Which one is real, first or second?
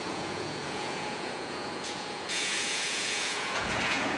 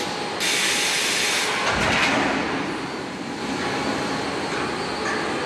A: second